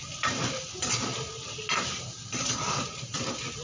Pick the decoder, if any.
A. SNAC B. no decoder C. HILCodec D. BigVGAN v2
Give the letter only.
B